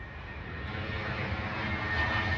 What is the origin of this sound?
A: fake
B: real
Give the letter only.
B